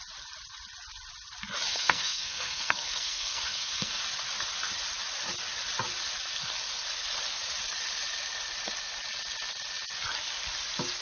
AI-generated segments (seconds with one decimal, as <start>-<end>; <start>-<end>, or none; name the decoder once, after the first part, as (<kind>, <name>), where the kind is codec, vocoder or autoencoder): 1.7-4.0 (codec, SNAC)